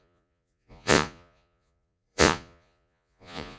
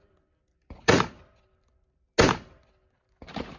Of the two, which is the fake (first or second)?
first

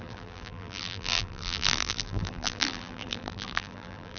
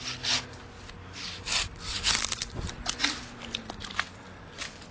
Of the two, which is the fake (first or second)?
first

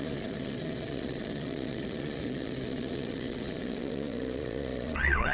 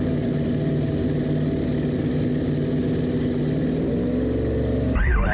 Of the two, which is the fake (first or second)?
first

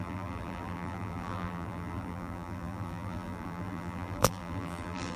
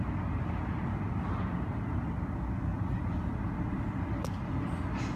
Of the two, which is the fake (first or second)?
first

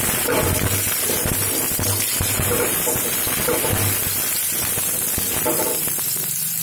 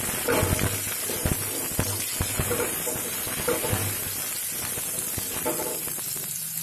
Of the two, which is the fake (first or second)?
first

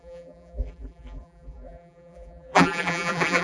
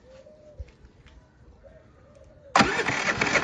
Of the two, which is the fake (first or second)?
first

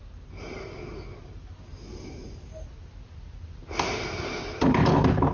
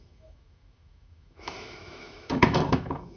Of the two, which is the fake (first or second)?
second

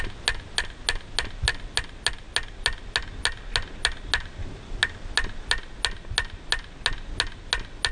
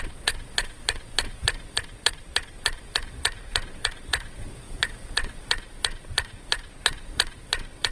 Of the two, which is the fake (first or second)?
second